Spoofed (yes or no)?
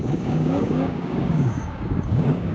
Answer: yes